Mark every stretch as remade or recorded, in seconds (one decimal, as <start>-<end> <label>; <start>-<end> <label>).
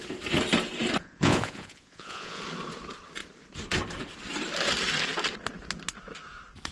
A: 0.0-1.0 recorded; 1.0-2.4 remade; 2.4-6.7 recorded